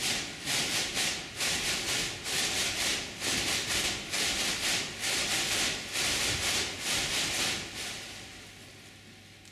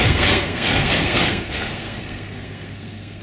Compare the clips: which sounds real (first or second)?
first